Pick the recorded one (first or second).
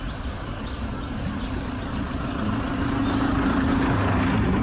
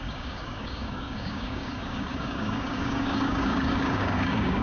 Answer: first